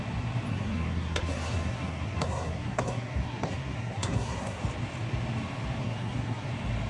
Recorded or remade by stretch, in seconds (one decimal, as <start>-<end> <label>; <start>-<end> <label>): 0.0-0.5 recorded; 0.5-4.6 remade; 4.6-5.8 recorded; 5.8-6.5 remade; 6.5-6.9 recorded